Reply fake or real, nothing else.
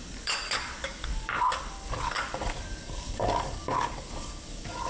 fake